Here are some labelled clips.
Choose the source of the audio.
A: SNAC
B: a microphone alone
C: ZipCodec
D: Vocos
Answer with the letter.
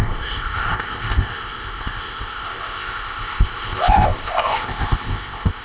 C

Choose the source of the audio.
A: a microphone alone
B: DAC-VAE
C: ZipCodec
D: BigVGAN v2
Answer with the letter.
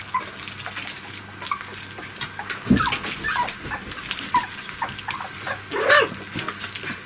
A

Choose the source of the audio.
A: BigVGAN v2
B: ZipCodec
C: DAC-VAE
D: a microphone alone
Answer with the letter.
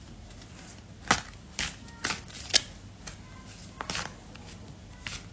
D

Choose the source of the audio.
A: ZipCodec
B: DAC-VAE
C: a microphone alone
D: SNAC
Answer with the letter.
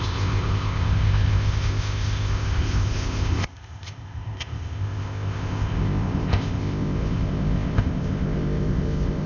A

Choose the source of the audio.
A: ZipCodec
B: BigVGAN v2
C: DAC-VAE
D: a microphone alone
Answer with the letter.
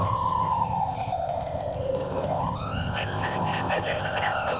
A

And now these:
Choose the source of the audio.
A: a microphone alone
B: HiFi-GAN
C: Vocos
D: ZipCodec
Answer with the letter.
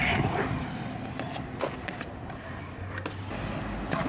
A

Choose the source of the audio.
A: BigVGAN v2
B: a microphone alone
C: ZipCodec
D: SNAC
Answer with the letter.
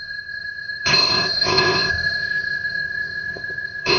C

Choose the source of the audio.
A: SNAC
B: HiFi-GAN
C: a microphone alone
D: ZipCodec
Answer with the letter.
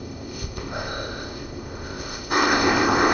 D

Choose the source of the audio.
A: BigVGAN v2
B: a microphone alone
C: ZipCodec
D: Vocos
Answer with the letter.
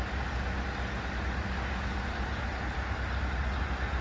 B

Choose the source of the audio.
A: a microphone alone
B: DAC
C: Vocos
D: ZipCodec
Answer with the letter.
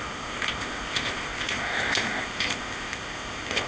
D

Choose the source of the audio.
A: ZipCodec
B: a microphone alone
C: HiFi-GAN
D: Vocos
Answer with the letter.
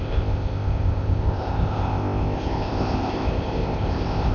A